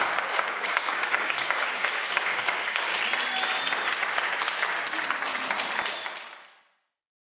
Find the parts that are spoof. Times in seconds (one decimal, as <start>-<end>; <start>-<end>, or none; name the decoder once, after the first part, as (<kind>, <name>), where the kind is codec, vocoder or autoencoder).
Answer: 0.0-2.9 (codec, DAC)